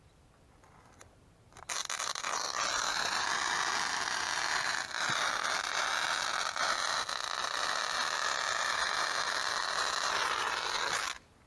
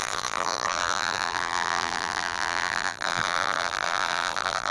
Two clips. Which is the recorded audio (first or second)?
first